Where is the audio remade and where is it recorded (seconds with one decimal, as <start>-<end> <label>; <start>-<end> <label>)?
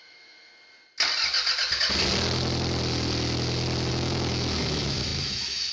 0.0-0.5 remade; 0.5-3.9 recorded; 3.9-5.7 remade